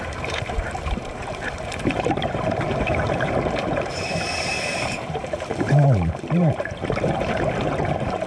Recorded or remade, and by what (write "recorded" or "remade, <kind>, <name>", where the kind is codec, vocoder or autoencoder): remade, vocoder, BigVGAN v2